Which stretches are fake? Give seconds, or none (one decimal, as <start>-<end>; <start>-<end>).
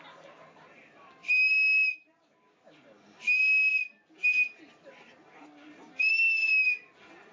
none